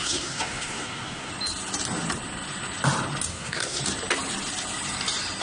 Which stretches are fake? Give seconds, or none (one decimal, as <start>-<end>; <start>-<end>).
0.0-1.3; 3.3-3.8